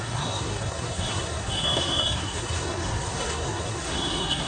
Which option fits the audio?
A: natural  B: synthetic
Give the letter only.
B